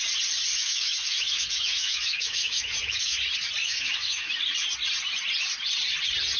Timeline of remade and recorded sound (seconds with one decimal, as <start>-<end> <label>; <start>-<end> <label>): 0.0-0.5 recorded; 0.5-3.2 remade; 3.2-3.6 recorded; 3.6-4.4 remade; 4.4-6.4 recorded